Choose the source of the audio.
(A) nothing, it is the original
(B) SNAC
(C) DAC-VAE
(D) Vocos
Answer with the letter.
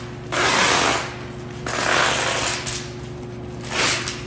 A